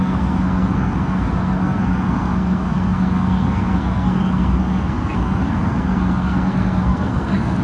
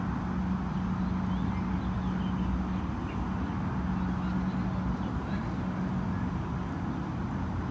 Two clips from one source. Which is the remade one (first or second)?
first